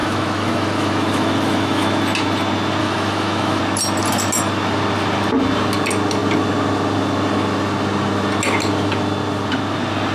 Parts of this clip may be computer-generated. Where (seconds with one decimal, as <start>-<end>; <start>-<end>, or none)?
0.0-2.0; 2.8-3.6